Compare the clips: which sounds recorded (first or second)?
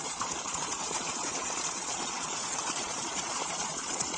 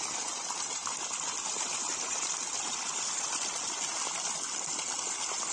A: second